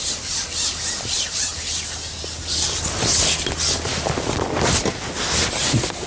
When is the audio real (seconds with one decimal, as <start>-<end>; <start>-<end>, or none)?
0.0-6.1